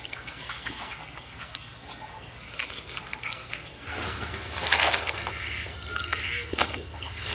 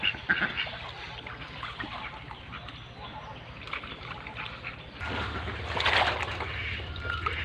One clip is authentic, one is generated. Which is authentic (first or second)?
second